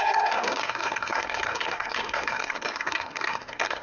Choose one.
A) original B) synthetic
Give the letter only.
B